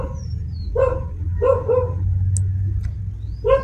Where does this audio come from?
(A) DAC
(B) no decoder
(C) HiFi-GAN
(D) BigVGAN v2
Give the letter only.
B